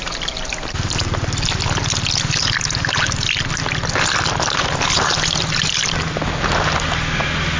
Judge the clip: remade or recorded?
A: recorded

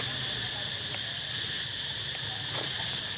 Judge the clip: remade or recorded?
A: recorded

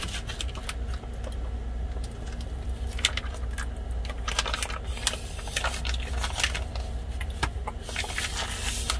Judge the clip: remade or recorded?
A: recorded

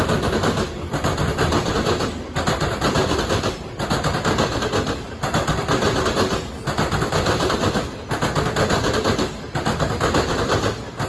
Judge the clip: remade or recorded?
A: recorded